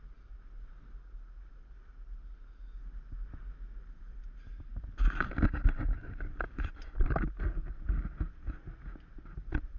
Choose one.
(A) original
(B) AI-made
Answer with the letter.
A